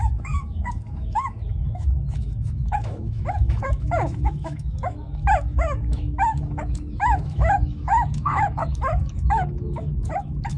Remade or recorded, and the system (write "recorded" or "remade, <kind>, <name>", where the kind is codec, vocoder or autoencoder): remade, autoencoder, DAC-VAE